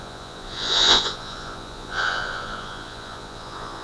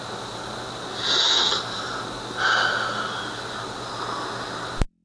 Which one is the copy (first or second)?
first